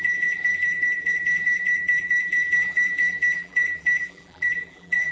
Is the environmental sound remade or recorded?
remade